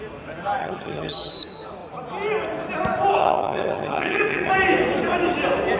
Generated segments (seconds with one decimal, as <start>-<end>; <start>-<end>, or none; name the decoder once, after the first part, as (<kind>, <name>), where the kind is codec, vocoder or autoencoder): 0.6-1.3 (vocoder, HiFi-GAN); 3.2-4.5